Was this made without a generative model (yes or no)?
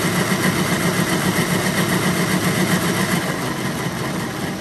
yes